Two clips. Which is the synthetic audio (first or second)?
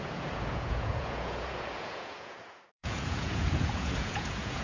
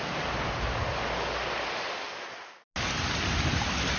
first